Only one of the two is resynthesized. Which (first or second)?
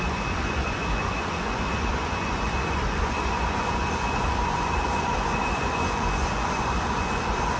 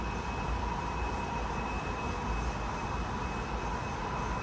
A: first